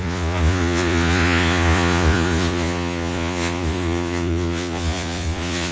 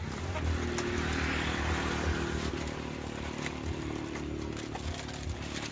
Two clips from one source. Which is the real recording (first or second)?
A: second